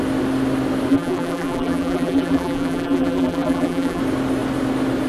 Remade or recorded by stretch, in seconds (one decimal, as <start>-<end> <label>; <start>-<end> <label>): 0.0-0.9 recorded; 0.9-4.0 remade; 4.0-5.1 recorded